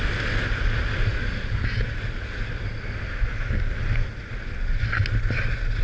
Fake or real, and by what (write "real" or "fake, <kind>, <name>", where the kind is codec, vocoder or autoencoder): real